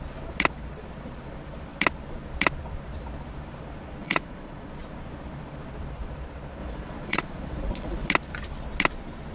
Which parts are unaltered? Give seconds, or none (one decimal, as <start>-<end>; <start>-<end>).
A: 0.0-4.0; 4.7-6.6; 8.1-9.3